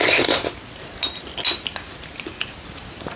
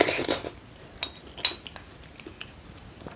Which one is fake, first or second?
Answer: first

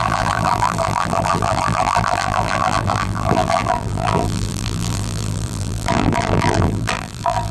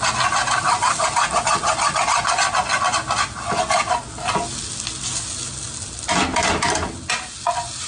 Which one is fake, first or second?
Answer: first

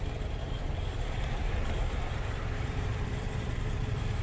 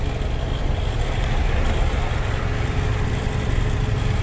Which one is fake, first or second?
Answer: first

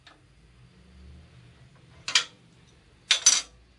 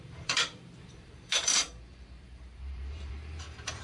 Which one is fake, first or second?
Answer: second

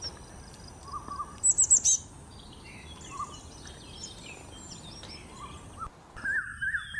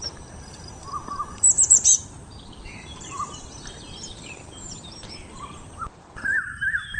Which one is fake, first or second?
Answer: second